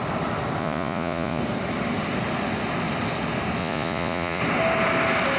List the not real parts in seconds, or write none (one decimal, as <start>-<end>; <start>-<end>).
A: 0.6-1.4; 3.6-4.4

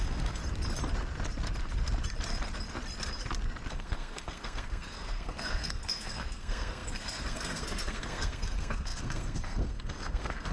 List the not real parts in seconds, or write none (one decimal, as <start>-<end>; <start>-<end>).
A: 0.0-0.4; 3.7-10.5

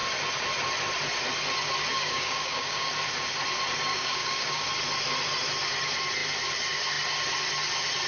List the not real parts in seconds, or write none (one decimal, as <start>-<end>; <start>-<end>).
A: 1.9-2.9; 3.9-4.7

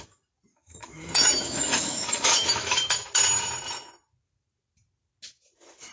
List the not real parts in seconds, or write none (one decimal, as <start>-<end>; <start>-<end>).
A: 0.5-3.1

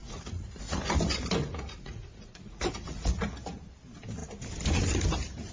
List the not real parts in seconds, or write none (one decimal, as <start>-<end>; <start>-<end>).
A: 0.0-0.9; 1.5-3.2